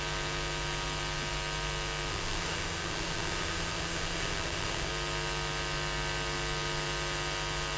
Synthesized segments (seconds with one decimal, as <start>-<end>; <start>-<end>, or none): 2.1-4.9